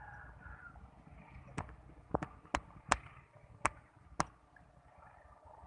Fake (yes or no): no